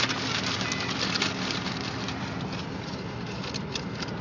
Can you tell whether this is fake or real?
real